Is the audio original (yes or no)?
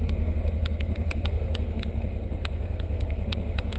no